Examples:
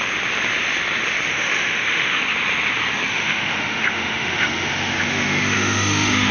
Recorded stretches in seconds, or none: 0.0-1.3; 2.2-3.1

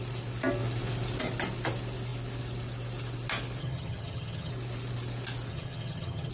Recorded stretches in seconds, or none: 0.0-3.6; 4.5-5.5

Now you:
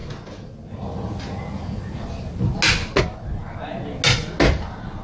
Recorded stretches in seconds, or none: 0.0-5.0